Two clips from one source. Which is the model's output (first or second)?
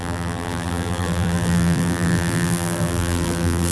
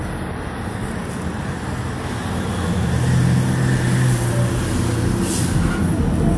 first